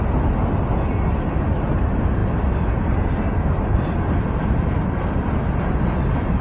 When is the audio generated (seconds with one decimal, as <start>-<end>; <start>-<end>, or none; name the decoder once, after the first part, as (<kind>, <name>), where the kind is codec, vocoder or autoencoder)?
none